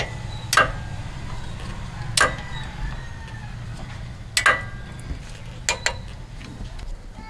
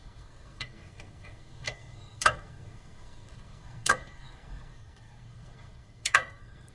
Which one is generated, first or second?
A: second